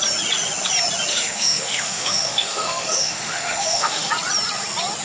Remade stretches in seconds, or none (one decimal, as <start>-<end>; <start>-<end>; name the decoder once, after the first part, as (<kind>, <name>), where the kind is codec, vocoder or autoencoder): 1.1-4.1 (autoencoder, DAC-VAE)